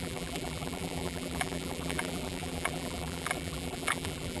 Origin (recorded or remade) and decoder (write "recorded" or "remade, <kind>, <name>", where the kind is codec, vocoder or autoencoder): remade, vocoder, BigVGAN v2